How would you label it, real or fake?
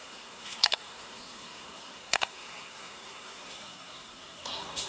fake